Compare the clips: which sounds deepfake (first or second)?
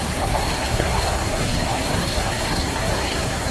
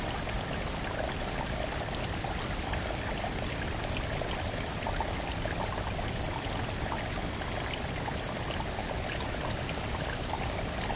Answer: first